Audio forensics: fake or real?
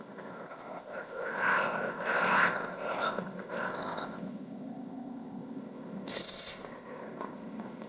fake